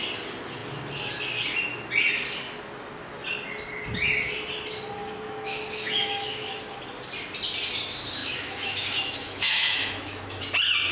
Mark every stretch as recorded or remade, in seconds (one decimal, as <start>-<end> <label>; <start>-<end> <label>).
0.0-5.0 recorded; 5.0-6.6 remade; 6.6-8.2 recorded; 8.2-10.4 remade; 10.4-10.9 recorded